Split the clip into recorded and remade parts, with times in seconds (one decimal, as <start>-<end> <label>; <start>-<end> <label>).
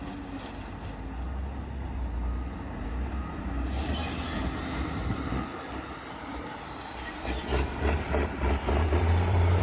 0.0-5.5 recorded; 5.5-9.6 remade